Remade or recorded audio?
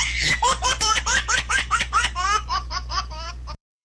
remade